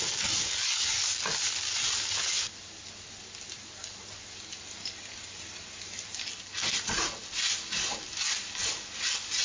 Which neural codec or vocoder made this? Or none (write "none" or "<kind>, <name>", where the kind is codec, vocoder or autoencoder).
none